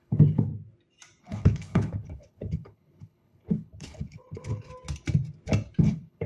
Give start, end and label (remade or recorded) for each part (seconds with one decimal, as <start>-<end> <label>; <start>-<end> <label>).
0.0-0.5 remade; 0.5-1.2 recorded; 1.2-4.7 remade; 4.7-5.8 recorded; 5.8-6.3 remade